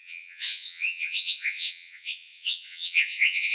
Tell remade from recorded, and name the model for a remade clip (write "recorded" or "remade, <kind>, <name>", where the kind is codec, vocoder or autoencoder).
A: remade, vocoder, Vocos